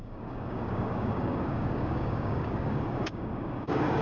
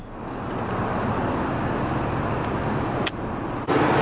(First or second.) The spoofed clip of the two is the first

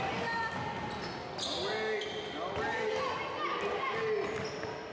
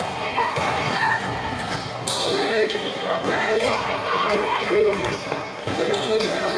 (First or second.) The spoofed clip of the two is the second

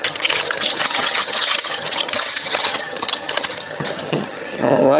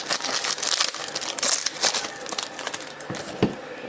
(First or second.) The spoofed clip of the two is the first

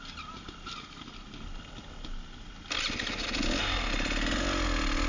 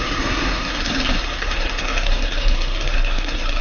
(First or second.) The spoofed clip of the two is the second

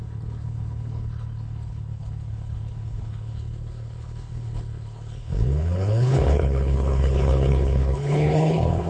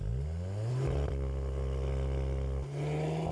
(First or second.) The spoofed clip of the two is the first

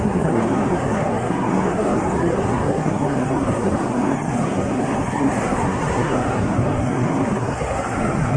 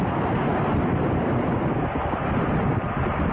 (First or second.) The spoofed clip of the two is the first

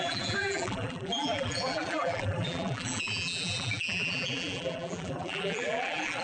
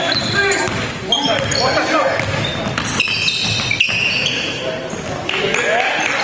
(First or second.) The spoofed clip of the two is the first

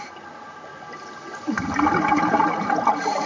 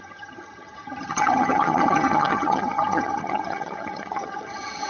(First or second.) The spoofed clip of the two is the second